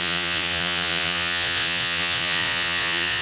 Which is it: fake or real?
fake